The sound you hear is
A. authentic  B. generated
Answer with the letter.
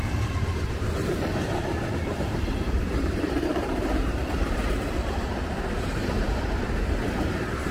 B